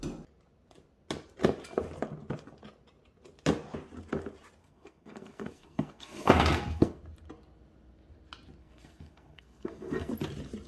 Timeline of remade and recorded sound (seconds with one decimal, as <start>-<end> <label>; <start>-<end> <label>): 0.0-4.6 recorded; 4.6-7.0 remade; 7.0-8.6 recorded; 8.6-10.1 remade; 10.1-10.7 recorded